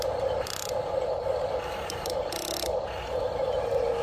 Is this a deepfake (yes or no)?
no